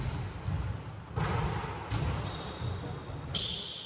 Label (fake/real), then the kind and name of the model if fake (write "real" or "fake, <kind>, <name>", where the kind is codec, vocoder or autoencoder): real